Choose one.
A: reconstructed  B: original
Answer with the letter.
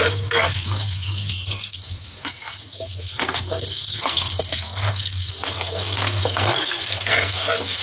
A